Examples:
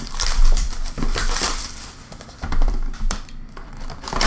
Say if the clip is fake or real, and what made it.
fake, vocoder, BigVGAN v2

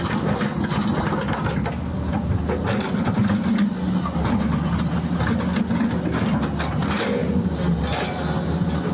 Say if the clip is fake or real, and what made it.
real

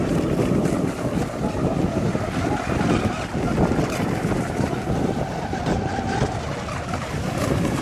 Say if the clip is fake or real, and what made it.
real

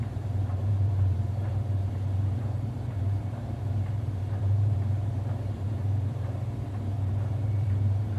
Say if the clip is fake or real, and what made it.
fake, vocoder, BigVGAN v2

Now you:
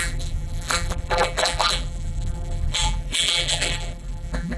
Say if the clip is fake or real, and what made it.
fake, vocoder, BigVGAN v2